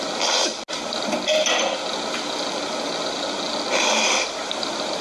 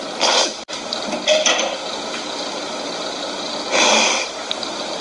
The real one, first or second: first